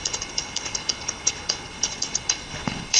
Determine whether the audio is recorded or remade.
remade